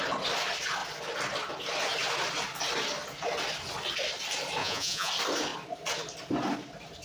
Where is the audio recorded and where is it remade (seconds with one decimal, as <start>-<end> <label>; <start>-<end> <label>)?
0.0-4.6 recorded; 4.6-5.1 remade; 5.1-7.0 recorded